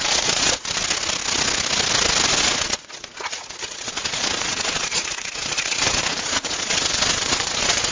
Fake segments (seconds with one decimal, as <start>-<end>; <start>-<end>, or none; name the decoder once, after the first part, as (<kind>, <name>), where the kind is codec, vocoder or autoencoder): 0.0-0.8 (vocoder, Vocos); 2.4-7.9